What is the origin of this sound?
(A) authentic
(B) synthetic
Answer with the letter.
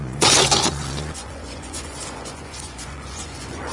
B